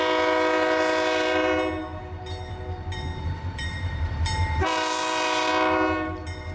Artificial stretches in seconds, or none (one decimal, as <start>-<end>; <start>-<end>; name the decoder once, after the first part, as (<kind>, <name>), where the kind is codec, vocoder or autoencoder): 1.9-5.5 (vocoder, BigVGAN v2)